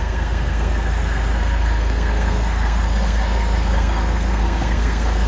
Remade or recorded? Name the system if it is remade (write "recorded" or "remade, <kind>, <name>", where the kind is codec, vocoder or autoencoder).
remade, codec, SNAC